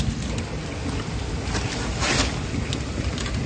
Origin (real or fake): real